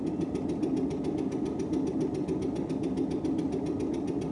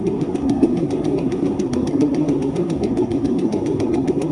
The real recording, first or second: first